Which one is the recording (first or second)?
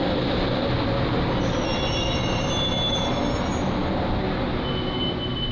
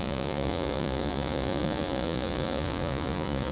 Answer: first